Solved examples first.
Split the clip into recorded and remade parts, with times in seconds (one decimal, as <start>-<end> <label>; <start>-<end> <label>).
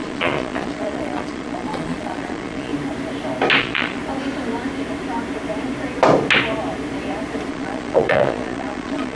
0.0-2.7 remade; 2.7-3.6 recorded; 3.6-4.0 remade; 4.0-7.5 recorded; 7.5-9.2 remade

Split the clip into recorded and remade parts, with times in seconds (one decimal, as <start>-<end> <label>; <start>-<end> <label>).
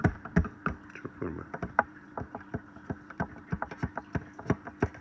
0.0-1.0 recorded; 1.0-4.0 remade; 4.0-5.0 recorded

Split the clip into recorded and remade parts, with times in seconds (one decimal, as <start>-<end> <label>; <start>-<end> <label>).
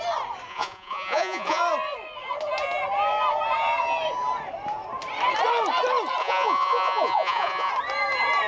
0.0-0.5 recorded; 0.5-1.6 remade; 1.6-6.2 recorded; 6.2-7.7 remade; 7.7-8.5 recorded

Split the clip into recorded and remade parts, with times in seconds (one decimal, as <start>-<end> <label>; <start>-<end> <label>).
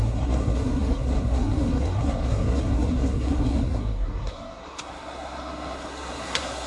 0.0-6.7 remade